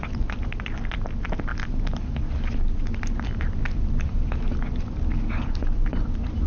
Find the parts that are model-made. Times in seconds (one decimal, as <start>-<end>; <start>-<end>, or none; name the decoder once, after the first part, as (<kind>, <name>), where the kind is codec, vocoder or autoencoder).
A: none